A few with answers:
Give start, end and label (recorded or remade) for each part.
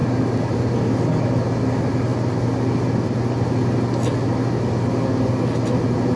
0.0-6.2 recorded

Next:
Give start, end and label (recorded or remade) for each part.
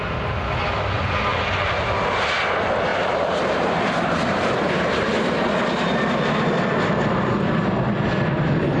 0.0-1.3 recorded; 1.3-2.0 remade; 2.0-2.9 recorded; 2.9-5.3 remade; 5.3-8.8 recorded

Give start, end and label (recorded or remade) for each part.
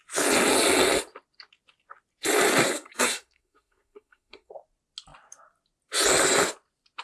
0.0-2.6 recorded; 2.6-4.5 remade; 4.5-7.0 recorded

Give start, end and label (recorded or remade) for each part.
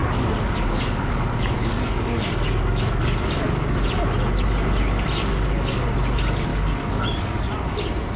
0.0-3.7 remade; 3.7-5.2 recorded; 5.2-5.8 remade; 5.8-6.5 recorded; 6.5-7.5 remade; 7.5-8.2 recorded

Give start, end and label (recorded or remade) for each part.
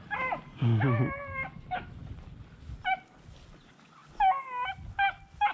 0.0-5.5 recorded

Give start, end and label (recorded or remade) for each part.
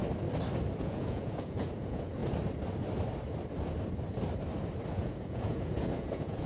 0.0-0.8 recorded; 0.8-2.2 remade; 2.2-4.9 recorded; 4.9-6.5 remade